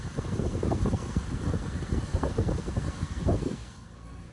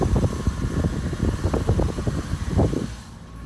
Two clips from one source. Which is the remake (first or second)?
first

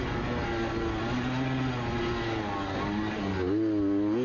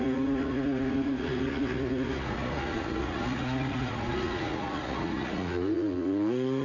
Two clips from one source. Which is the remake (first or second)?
second